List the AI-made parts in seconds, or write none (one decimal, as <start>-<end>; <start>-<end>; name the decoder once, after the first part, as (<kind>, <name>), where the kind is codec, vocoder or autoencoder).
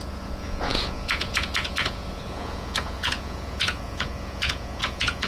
0.0-5.3 (vocoder, Vocos)